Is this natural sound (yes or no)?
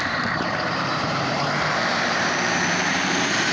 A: no